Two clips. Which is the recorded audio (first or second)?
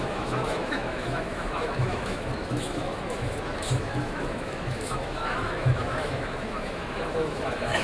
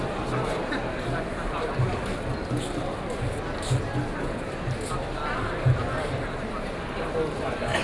second